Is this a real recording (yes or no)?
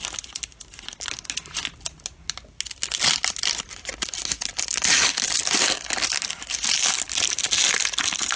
yes